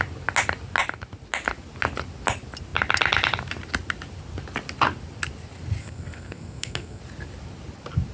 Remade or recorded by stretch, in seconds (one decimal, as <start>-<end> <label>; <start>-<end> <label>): 0.0-5.8 recorded; 5.8-7.0 remade; 7.0-8.1 recorded